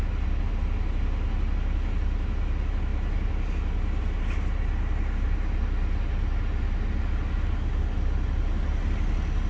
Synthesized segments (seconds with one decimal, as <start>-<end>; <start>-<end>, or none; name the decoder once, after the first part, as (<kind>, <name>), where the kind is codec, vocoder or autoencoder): none